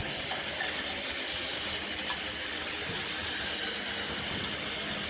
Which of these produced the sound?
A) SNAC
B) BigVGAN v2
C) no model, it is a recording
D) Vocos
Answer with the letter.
C